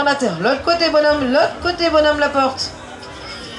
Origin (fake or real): real